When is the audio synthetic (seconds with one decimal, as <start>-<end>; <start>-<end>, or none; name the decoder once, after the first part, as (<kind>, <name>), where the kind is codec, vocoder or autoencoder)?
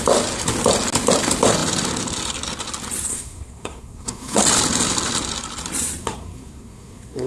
3.1-4.4 (codec, SNAC); 6.0-7.3